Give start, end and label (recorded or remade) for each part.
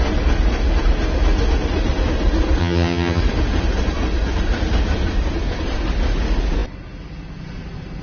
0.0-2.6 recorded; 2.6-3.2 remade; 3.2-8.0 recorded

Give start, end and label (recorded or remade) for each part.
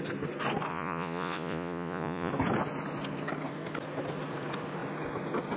0.0-0.7 recorded; 0.7-2.3 remade; 2.3-5.6 recorded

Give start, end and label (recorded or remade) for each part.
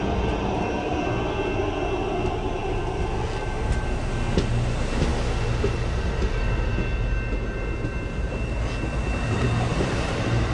0.0-1.0 remade; 1.0-9.7 recorded; 9.7-10.5 remade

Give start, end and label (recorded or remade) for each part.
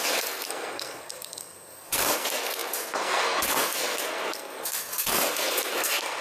0.0-6.2 remade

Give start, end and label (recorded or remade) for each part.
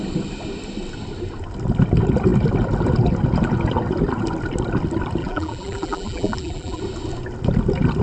0.0-5.2 recorded; 5.2-6.8 remade; 6.8-8.0 recorded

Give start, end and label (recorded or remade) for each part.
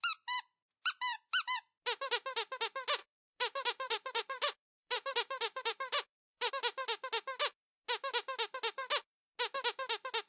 0.0-3.0 recorded; 3.0-6.5 remade; 6.5-10.3 recorded